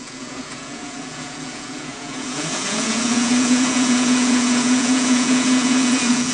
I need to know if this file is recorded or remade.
remade